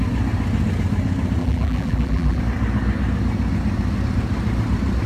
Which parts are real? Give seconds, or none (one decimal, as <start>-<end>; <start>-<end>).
0.0-1.4; 2.4-5.1